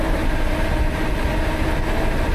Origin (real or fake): real